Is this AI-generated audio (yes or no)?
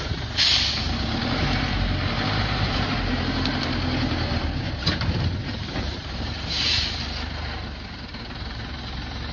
yes